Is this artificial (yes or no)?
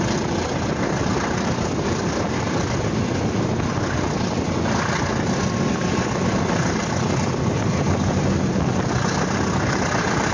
no